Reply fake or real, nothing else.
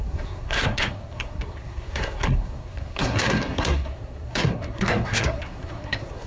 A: fake